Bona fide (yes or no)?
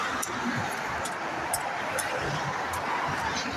yes